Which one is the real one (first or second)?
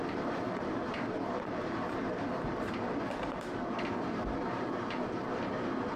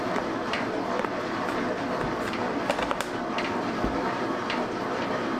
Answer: second